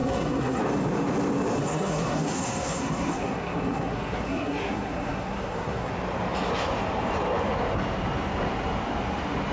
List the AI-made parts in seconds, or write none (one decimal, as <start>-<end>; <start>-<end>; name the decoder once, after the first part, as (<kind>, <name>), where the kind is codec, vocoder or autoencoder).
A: 0.0-0.6 (codec, SNAC); 1.6-5.9